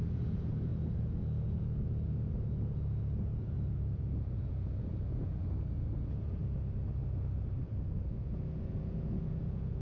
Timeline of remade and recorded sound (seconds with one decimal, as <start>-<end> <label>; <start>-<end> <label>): 0.0-6.4 remade; 6.4-7.6 recorded; 7.6-9.8 remade